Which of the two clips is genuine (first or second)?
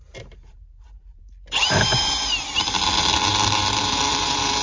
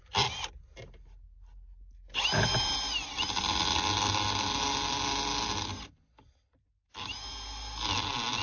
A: second